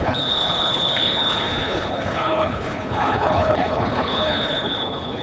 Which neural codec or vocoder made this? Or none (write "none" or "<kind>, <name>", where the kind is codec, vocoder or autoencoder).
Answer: codec, HILCodec